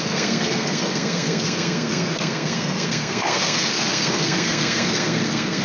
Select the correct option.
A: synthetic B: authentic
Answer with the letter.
A